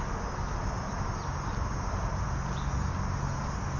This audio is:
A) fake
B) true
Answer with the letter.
B